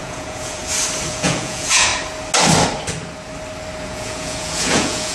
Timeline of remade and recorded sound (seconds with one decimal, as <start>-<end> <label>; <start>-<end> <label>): 0.0-0.6 remade; 0.6-1.1 recorded; 1.1-1.9 remade; 1.9-3.8 recorded; 3.8-5.1 remade